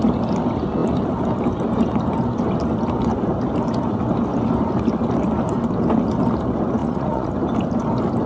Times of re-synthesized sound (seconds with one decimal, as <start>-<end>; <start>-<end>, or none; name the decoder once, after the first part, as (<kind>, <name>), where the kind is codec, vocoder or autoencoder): 6.8-7.3 (vocoder, Vocos)